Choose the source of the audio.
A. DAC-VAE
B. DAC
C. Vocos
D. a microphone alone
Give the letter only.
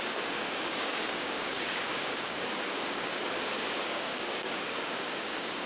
B